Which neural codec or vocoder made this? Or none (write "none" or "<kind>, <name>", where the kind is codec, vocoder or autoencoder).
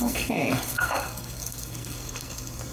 codec, SNAC